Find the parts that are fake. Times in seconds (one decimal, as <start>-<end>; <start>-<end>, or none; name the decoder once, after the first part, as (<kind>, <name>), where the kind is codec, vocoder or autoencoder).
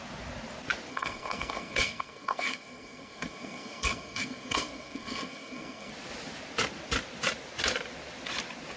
0.9-5.9 (codec, SNAC)